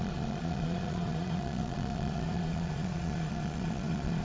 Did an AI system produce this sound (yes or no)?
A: yes